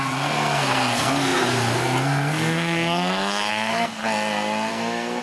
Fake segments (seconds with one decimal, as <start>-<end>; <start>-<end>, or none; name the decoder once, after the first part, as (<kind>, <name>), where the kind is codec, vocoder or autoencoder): 0.0-4.0 (codec, SNAC); 4.7-5.2